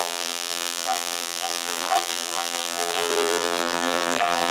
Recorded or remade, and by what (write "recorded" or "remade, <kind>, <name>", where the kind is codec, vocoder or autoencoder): remade, vocoder, BigVGAN v2